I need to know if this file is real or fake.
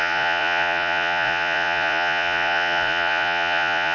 fake